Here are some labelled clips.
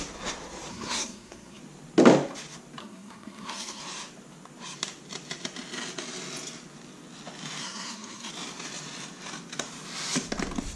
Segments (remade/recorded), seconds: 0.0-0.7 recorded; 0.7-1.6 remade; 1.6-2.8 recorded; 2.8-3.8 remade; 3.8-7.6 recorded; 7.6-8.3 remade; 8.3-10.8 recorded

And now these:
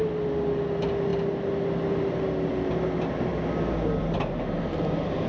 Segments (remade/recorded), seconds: 0.0-5.3 recorded

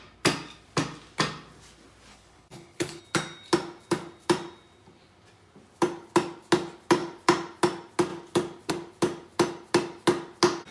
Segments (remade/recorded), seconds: 0.0-2.1 recorded; 2.1-3.0 remade; 3.0-10.7 recorded